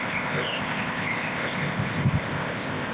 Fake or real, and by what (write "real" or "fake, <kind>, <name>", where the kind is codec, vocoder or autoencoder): fake, codec, ZipCodec